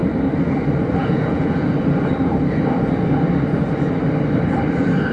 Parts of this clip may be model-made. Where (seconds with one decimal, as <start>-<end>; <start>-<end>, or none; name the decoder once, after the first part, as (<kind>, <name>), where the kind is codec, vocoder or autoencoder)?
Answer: 1.0-1.7 (vocoder, Vocos)

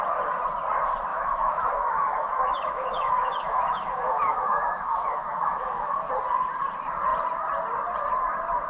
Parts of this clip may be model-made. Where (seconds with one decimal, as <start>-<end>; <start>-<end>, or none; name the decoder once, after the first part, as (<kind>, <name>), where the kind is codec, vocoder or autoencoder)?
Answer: 1.1-6.1 (autoencoder, DAC-VAE)

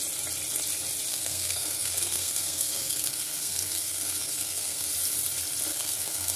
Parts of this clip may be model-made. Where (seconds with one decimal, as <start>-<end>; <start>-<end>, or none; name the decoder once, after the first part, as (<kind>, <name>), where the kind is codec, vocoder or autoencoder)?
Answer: 1.1-4.9 (codec, SNAC); 5.7-6.4

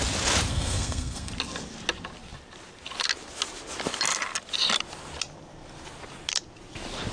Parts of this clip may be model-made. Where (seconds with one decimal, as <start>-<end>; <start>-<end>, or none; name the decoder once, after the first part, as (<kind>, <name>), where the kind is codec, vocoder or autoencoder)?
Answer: 0.5-1.3 (codec, SNAC)

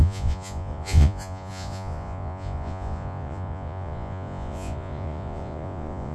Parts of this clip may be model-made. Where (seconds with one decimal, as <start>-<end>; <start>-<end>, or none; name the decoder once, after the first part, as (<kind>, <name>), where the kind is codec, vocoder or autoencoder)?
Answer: 0.0-6.1 (vocoder, Vocos)

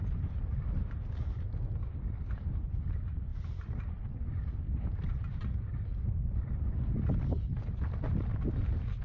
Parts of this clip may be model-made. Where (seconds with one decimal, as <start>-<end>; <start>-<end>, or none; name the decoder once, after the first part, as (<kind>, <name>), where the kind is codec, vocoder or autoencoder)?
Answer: none

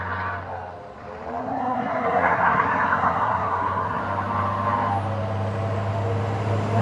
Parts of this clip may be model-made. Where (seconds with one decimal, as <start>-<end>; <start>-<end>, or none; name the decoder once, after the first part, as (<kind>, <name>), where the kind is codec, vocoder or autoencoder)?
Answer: 1.4-4.0 (codec, SNAC)